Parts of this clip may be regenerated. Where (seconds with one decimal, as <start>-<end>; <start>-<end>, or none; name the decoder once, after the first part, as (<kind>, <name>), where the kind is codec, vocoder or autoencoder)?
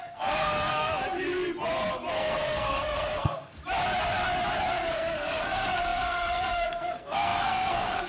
0.0-1.0 (codec, SNAC); 2.1-3.6; 4.7-8.1